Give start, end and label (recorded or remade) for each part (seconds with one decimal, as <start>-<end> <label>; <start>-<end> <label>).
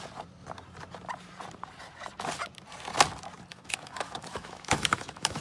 0.0-3.5 recorded; 3.5-5.4 remade